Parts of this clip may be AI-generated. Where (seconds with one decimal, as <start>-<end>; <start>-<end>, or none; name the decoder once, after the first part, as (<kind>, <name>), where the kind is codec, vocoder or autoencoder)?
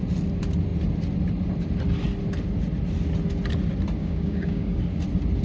4.0-4.8 (codec, DAC)